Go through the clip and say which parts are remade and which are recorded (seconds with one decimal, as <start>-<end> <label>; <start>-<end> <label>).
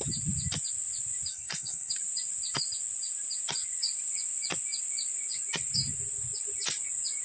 0.0-1.3 recorded; 1.3-1.9 remade; 1.9-7.2 recorded